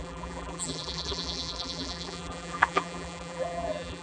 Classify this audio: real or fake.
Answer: fake